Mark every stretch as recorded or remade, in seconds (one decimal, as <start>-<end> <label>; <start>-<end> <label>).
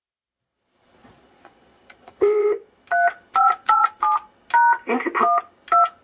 0.0-1.0 recorded; 1.0-2.5 remade; 2.5-3.4 recorded; 3.4-3.9 remade; 3.9-6.0 recorded